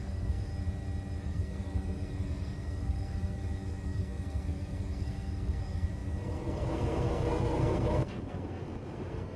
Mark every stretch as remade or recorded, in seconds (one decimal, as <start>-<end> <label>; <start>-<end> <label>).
0.0-0.5 remade; 0.5-1.2 recorded; 1.2-9.4 remade